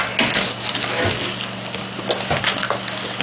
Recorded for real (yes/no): yes